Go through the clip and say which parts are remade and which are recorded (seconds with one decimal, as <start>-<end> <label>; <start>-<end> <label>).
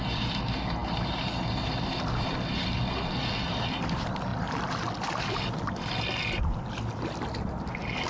0.0-8.1 recorded